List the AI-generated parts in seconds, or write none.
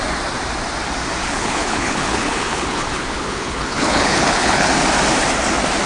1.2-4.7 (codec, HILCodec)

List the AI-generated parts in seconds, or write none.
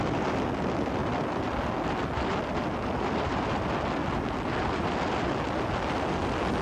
none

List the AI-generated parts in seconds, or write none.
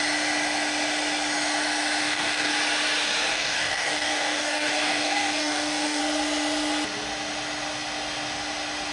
2.0-2.5 (codec, DAC); 3.3-6.0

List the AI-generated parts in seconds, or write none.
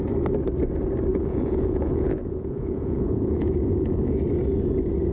1.1-4.2 (vocoder, Vocos)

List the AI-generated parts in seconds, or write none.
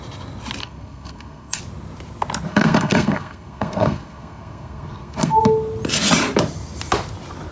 0.6-1.6 (codec, SNAC); 2.5-5.4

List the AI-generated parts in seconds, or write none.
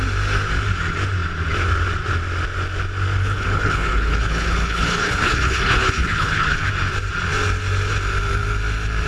3.2-6.7 (codec, HILCodec)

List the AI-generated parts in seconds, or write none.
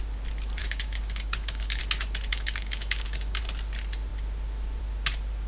0.6-1.8 (codec, DAC); 2.3-3.4